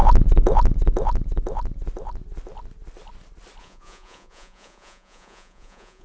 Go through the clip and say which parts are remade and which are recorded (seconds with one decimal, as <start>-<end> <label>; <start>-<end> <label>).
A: 0.0-3.6 recorded; 3.6-6.0 remade